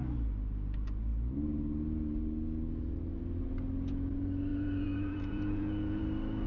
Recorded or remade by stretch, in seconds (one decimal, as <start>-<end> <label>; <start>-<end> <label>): 0.0-4.5 recorded; 4.5-6.0 remade; 6.0-6.5 recorded